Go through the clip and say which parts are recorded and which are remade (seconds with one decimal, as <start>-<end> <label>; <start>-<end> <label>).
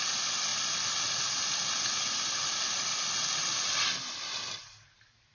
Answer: 0.0-5.3 recorded